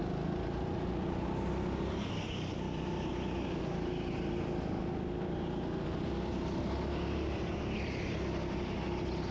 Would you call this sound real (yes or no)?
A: yes